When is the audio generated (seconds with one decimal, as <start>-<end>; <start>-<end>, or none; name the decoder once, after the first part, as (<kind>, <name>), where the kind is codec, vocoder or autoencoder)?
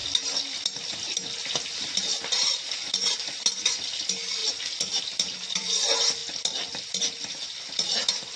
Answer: none